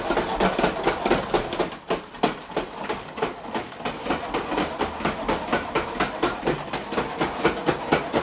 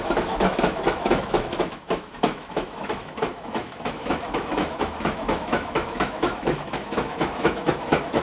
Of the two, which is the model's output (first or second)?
second